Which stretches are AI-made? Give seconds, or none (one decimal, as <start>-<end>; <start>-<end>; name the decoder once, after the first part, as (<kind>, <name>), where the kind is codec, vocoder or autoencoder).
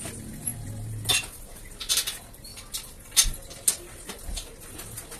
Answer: none